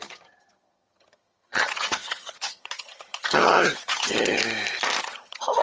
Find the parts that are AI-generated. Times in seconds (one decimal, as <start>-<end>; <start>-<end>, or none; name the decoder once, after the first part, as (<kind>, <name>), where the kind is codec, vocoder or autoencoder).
0.0-4.4 (vocoder, HiFi-GAN); 5.0-5.6